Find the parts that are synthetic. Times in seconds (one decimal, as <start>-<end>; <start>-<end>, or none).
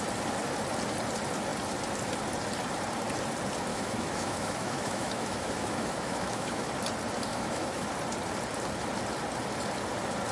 3.7-6.7; 7.3-7.9